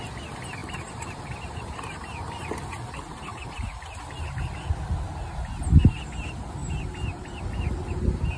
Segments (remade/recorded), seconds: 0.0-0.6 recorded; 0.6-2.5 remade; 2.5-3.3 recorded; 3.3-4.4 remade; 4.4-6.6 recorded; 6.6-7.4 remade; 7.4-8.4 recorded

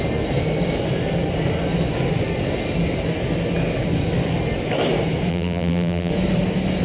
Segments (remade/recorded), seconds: 0.0-5.3 recorded; 5.3-6.1 remade; 6.1-6.8 recorded